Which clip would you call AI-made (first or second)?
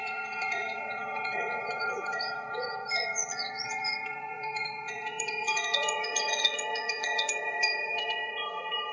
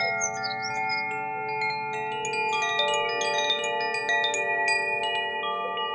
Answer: first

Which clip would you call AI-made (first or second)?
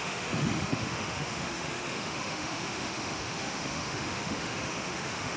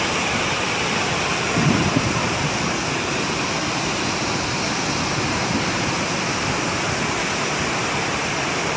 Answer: first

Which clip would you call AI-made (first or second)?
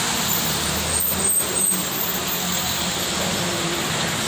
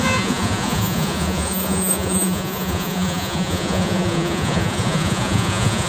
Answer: second